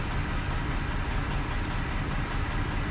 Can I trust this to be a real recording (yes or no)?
yes